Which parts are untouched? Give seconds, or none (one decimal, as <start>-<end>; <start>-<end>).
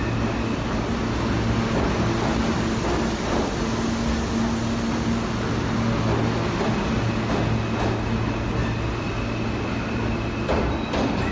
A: 0.0-11.3